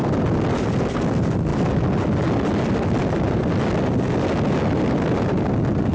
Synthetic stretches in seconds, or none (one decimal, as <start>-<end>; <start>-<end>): none